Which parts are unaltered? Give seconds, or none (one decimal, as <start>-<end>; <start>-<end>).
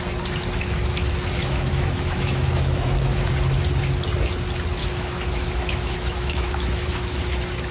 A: 0.0-1.4; 3.3-4.8; 7.2-7.7